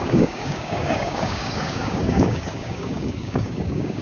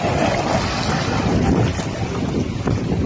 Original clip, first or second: second